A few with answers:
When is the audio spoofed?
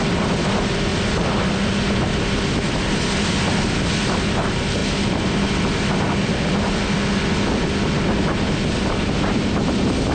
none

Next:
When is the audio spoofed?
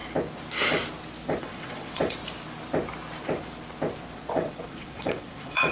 1.4-2.2 (vocoder, WaveNeXt); 4.1-5.7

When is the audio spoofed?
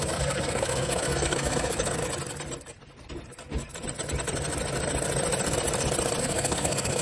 0.0-2.0 (codec, SNAC); 6.2-7.0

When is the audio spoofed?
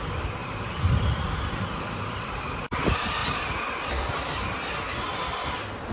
0.4-2.8 (vocoder, BigVGAN v2); 3.2-4.1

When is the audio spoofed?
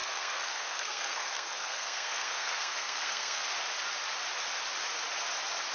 0.0-3.4 (codec, SNAC)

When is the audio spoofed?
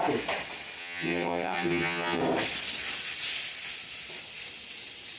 0.8-2.2 (vocoder, HiFi-GAN)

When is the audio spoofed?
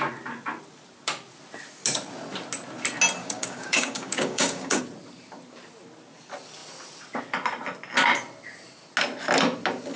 3.2-4.8 (codec, DAC)